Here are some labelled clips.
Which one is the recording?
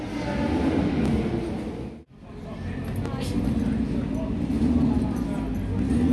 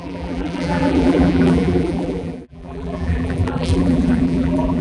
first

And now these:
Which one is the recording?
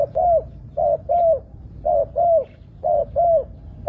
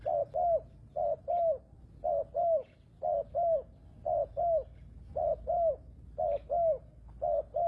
second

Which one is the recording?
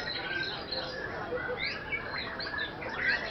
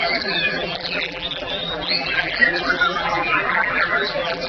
first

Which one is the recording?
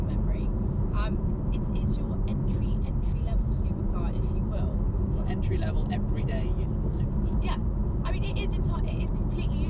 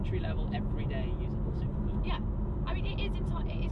second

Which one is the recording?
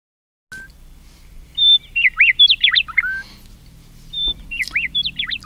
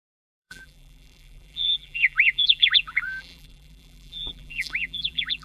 first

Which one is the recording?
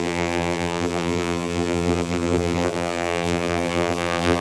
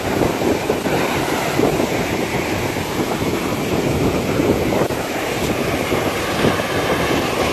second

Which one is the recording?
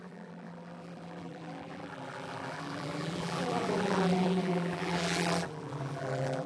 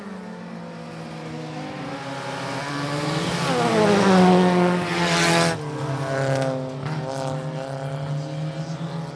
second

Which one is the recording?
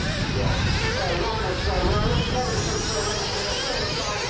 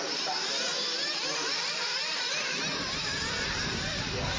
first